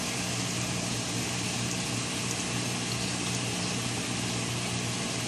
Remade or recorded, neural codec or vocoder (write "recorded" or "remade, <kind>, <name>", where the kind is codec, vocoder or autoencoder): recorded